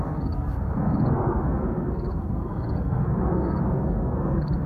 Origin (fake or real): fake